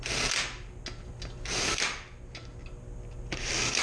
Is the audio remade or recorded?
recorded